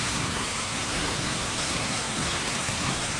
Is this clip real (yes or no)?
no